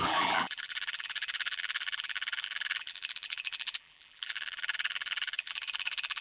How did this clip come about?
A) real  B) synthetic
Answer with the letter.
B